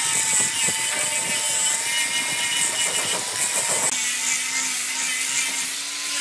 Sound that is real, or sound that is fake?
real